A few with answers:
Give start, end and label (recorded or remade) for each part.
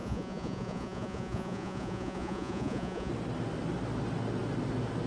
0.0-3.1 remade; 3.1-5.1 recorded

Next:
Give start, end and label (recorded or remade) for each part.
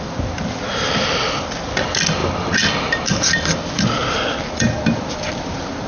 0.0-5.9 recorded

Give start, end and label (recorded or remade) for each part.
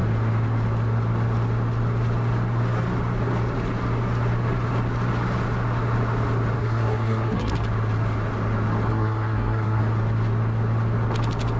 0.0-6.6 recorded; 6.6-7.5 remade; 7.5-8.9 recorded; 8.9-9.8 remade; 9.8-11.6 recorded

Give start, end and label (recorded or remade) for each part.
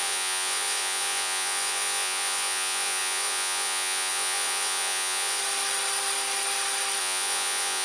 0.0-5.4 remade; 5.4-7.0 recorded; 7.0-7.8 remade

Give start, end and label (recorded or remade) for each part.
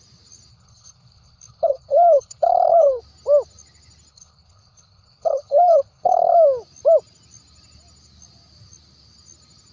0.0-0.5 recorded; 0.5-3.0 remade; 3.0-4.1 recorded; 4.1-6.3 remade; 6.3-9.7 recorded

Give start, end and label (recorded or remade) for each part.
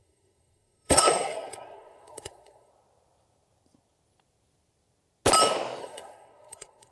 0.0-2.7 remade; 2.7-5.8 recorded; 5.8-6.9 remade